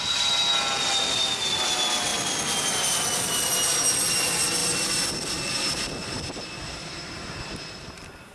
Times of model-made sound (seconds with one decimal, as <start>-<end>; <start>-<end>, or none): none